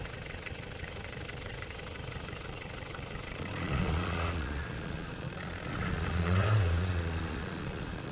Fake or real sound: fake